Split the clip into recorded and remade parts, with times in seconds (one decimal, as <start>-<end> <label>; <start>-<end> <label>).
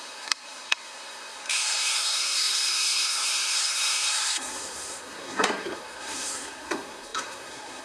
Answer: 0.0-7.8 remade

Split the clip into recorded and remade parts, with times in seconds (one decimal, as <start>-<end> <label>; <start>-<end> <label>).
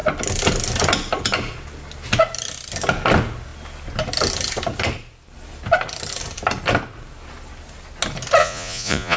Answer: 0.0-8.4 recorded; 8.4-9.2 remade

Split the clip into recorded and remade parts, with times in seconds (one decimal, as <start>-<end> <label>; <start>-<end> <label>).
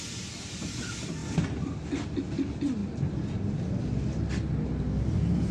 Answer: 0.0-1.2 remade; 1.2-2.2 recorded; 2.2-2.8 remade; 2.8-5.0 recorded; 5.0-5.5 remade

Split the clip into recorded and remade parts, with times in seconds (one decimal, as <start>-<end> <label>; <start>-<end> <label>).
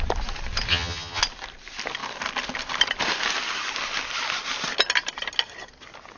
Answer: 0.0-0.7 recorded; 0.7-1.2 remade; 1.2-6.2 recorded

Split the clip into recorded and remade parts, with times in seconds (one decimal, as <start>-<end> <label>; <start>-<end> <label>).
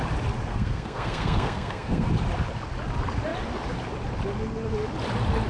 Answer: 0.0-0.5 recorded; 0.5-2.1 remade; 2.1-5.5 recorded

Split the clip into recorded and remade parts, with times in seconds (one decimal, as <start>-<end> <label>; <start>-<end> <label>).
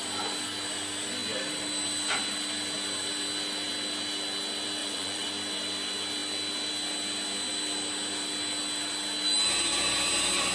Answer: 0.0-4.8 recorded; 4.8-5.3 remade; 5.3-10.5 recorded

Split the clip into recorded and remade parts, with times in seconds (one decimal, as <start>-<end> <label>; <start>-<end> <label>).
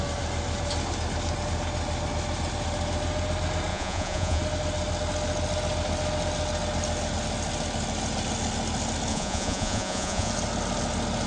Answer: 0.0-3.7 recorded; 3.7-4.4 remade; 4.4-9.1 recorded; 9.1-10.3 remade; 10.3-11.3 recorded